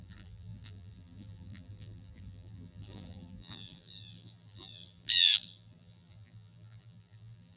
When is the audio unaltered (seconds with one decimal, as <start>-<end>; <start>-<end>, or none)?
none